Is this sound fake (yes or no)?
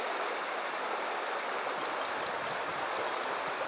no